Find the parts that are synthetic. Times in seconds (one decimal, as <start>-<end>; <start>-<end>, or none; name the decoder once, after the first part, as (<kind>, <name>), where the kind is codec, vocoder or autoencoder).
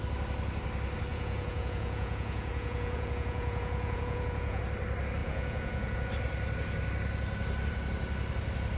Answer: 1.1-4.6 (vocoder, Vocos); 5.2-6.1